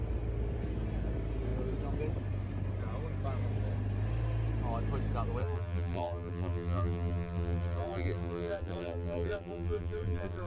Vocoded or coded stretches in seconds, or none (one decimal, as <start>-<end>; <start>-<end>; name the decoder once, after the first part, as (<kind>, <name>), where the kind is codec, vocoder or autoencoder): 5.4-10.5 (vocoder, BigVGAN v2)

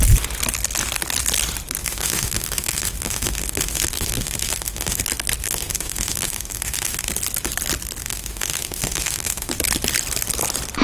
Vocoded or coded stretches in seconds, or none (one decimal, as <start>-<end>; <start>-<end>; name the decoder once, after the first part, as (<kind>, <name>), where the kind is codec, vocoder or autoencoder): 1.8-5.0 (autoencoder, DAC-VAE); 5.4-7.1; 8.0-9.5

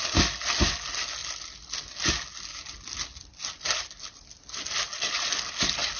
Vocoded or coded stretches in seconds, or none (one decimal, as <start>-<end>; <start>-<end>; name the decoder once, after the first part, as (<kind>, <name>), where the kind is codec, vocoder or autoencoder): none